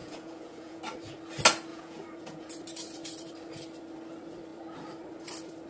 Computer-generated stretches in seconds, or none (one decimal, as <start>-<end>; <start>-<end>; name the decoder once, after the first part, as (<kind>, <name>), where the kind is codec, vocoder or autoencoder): 0.0-0.8 (vocoder, Vocos); 1.7-2.5